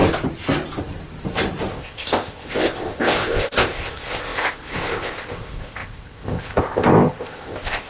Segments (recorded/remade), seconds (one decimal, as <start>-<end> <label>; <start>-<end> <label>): 0.0-1.7 recorded; 1.7-7.9 remade